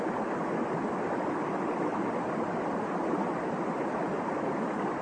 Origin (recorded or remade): recorded